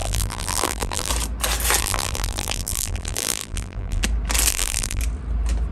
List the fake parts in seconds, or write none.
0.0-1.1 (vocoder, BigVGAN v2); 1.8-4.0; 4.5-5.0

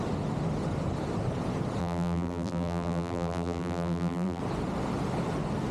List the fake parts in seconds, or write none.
1.8-4.4 (vocoder, BigVGAN v2)

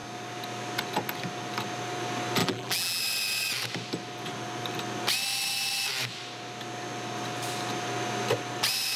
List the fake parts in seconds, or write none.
2.4-3.0 (vocoder, BigVGAN v2)